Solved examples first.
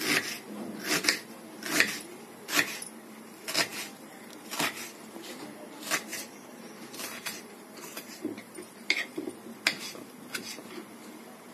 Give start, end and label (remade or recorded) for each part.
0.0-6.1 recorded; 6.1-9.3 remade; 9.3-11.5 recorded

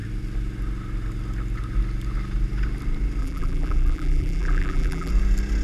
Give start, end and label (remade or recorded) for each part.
0.0-3.2 recorded; 3.2-5.1 remade; 5.1-5.6 recorded

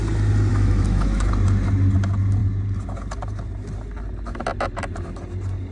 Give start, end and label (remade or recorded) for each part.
0.0-0.5 recorded; 0.5-1.3 remade; 1.3-5.7 recorded

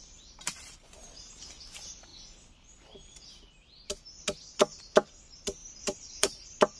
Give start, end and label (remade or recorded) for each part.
0.0-1.4 remade; 1.4-5.6 recorded; 5.6-6.8 remade

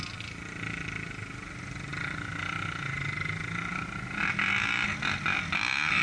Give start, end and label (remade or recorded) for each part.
0.0-6.0 recorded

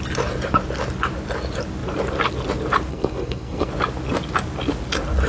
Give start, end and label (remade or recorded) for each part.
0.0-2.9 recorded; 2.9-3.7 remade; 3.7-5.3 recorded

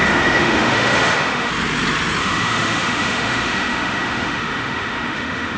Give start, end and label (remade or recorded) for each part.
0.0-1.5 remade; 1.5-2.2 recorded; 2.2-5.6 remade

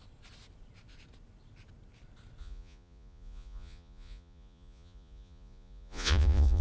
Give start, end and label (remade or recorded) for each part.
0.0-2.4 recorded; 2.4-6.6 remade